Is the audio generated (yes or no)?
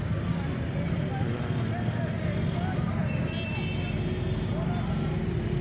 no